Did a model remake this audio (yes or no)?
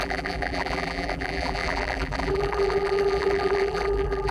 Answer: yes